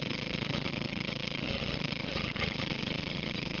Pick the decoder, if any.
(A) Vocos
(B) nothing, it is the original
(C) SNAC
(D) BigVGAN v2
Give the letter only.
A